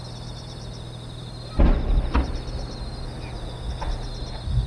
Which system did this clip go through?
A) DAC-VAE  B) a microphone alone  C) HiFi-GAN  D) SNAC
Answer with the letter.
B